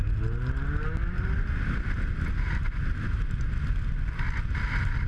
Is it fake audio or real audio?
real